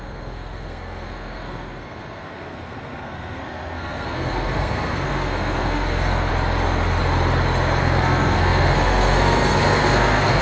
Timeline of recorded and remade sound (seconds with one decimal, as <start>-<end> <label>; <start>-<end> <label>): 0.0-6.3 remade; 6.3-7.8 recorded; 7.8-10.4 remade